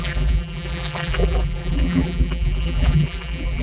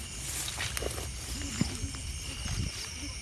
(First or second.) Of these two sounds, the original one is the second